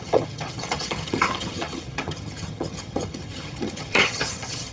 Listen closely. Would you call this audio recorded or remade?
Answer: remade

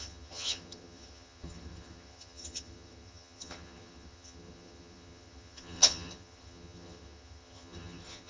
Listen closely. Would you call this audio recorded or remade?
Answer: remade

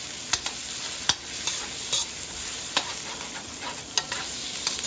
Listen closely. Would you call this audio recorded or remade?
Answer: recorded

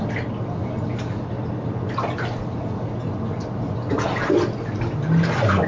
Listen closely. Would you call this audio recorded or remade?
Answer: recorded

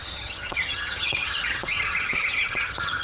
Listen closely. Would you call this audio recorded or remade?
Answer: remade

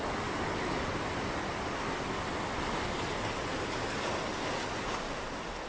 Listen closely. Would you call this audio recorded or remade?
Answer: recorded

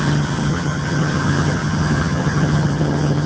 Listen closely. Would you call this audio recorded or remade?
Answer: remade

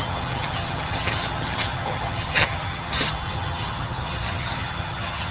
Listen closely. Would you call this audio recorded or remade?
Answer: remade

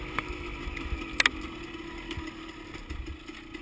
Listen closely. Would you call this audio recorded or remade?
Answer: recorded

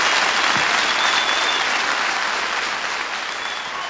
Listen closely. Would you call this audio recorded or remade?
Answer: recorded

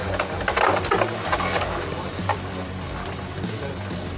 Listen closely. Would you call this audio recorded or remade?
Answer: recorded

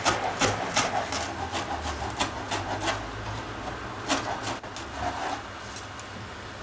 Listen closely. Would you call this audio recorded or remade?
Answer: recorded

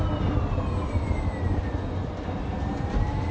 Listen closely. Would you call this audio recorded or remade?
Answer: recorded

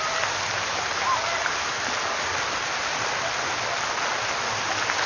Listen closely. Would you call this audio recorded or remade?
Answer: recorded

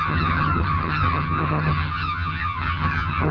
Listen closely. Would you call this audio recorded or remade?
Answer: remade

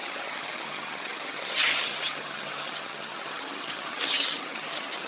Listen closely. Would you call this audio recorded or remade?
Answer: remade